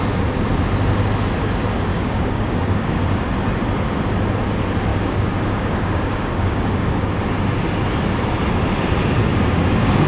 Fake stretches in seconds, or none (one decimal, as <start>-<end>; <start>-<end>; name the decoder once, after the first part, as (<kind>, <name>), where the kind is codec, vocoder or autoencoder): 1.9-3.3 (codec, DAC); 4.9-7.2; 9.3-10.1